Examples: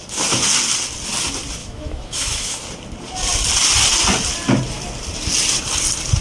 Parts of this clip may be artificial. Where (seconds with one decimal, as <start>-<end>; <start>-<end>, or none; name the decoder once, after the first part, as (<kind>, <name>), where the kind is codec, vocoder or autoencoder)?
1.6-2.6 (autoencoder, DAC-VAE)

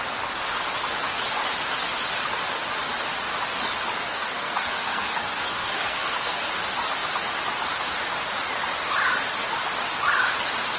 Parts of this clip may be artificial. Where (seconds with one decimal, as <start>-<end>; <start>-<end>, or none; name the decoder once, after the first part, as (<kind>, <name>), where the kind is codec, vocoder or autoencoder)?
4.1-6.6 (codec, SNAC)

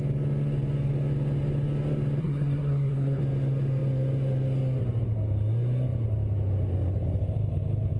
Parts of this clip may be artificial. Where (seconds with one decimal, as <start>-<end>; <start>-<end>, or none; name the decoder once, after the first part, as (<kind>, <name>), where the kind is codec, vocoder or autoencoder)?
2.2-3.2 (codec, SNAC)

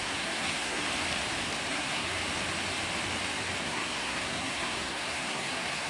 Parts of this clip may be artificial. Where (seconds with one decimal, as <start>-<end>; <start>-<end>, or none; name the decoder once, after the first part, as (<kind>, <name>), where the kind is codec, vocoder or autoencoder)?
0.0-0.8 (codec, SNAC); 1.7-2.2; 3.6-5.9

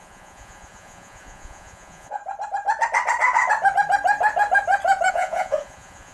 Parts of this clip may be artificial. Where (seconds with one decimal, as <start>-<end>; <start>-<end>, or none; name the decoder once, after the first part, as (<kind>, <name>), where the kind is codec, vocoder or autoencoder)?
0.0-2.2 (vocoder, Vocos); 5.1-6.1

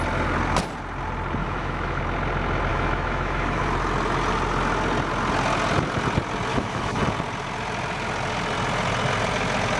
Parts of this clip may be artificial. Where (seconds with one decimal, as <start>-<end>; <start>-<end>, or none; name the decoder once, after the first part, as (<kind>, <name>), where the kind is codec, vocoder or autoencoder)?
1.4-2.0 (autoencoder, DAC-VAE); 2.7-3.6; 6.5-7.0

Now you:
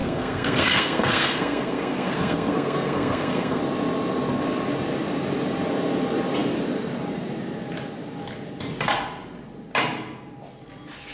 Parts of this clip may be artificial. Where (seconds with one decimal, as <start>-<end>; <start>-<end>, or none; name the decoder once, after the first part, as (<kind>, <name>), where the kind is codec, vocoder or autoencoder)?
0.0-3.6 (codec, SNAC)

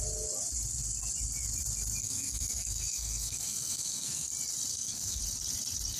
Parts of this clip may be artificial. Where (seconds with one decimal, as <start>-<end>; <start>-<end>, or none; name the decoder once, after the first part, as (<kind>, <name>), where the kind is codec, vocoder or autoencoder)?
2.0-4.3 (codec, SNAC); 4.7-5.2